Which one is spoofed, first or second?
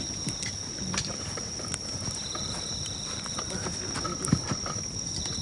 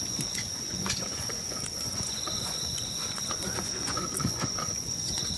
second